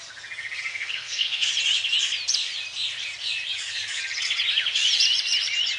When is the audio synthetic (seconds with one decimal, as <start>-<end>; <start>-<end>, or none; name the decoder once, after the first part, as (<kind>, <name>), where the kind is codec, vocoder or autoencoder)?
0.7-1.5 (codec, SNAC)